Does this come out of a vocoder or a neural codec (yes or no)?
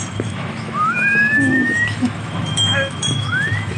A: yes